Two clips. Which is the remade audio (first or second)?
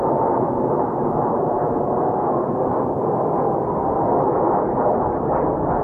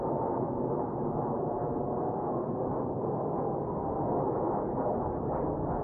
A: first